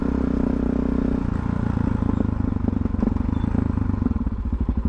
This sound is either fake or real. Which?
real